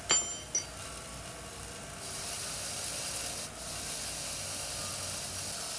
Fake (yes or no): no